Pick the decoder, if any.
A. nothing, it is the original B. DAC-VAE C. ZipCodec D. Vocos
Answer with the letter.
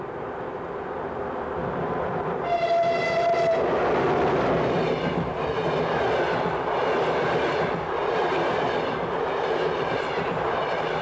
A